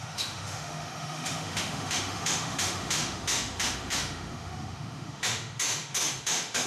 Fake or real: fake